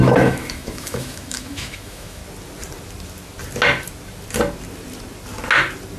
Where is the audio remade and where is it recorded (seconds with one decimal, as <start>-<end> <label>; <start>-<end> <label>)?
0.0-2.2 remade; 2.2-6.0 recorded